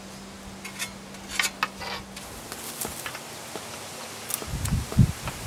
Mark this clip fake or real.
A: real